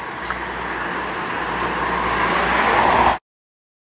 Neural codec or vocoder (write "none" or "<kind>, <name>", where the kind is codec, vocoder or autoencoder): none